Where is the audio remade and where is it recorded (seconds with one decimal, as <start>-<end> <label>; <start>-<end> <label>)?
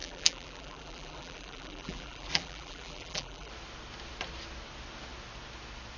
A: 0.0-3.5 remade; 3.5-6.0 recorded